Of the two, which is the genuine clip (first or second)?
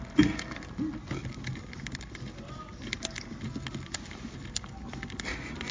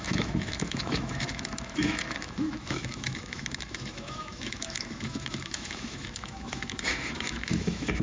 first